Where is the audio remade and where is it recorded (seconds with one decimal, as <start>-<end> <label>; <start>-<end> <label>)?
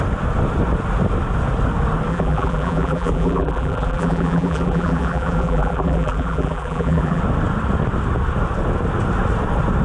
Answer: 0.0-2.1 recorded; 2.1-7.2 remade; 7.2-9.8 recorded